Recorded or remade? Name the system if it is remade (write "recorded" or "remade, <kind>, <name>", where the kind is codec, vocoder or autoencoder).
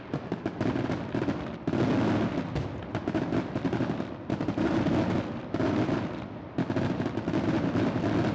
recorded